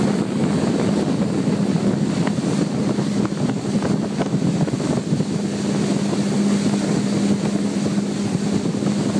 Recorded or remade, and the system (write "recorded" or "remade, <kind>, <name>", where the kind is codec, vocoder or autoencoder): recorded